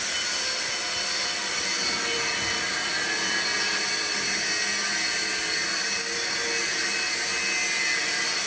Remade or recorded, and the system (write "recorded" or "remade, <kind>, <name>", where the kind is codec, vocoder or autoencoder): recorded